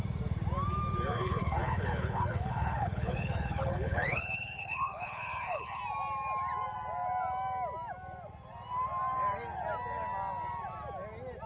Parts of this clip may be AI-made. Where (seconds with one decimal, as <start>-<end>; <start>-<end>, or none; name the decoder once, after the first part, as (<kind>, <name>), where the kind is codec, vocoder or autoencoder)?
1.1-5.8 (codec, HILCodec)